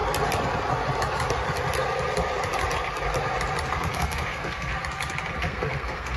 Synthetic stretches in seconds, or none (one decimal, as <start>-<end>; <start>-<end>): 3.7-4.7; 5.4-6.2